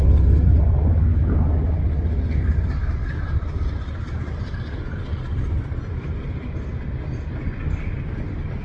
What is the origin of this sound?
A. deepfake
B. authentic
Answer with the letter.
B